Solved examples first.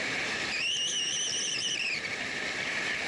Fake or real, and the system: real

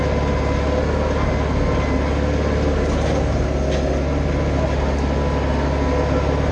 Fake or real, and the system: real